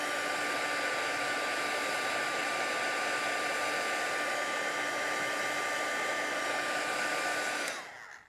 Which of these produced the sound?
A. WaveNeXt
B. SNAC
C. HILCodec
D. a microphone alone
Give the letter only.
D